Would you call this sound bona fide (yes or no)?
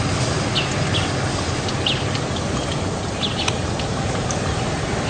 yes